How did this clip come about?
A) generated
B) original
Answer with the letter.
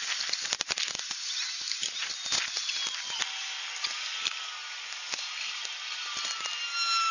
B